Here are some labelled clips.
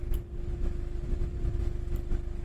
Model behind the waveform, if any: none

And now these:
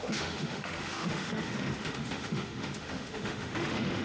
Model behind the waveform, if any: autoencoder, DAC-VAE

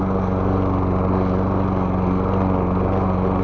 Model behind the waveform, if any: none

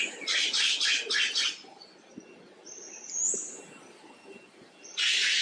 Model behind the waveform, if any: none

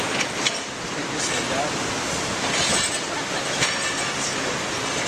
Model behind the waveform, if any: none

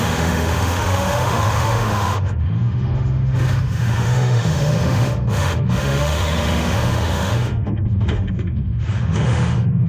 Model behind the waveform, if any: autoencoder, DAC-VAE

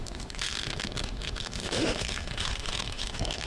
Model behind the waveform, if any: autoencoder, DAC-VAE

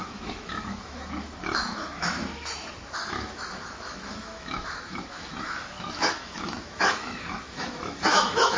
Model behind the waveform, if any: autoencoder, DAC-VAE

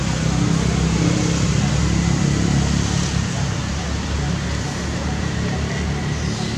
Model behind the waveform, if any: none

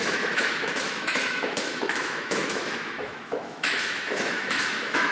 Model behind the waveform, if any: autoencoder, DAC-VAE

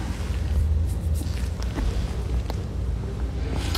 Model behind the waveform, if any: none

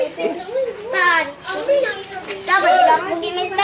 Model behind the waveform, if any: none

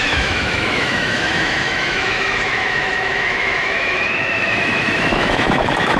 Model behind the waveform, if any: autoencoder, DAC-VAE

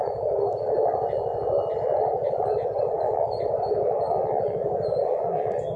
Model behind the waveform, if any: none